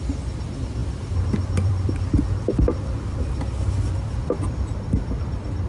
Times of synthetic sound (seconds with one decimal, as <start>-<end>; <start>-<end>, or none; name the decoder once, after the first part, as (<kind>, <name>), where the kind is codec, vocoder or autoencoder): 0.8-4.2 (vocoder, BigVGAN v2)